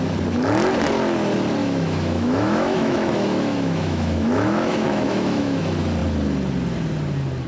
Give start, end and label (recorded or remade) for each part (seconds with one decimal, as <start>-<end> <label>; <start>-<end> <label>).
0.0-1.6 recorded; 1.6-5.6 remade; 5.6-7.5 recorded